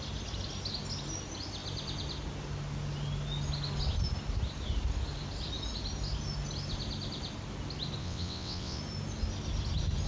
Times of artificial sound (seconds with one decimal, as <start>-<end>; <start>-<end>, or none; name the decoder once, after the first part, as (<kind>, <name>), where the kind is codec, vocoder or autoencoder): 8.0-8.8 (vocoder, WaveNeXt)